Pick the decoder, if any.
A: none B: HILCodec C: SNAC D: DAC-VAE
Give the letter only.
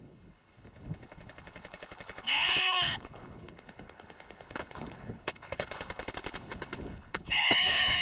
B